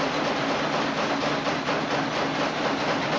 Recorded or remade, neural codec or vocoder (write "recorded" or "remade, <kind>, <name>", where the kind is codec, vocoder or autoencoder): recorded